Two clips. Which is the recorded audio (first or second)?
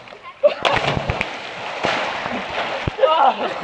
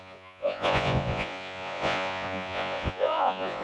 first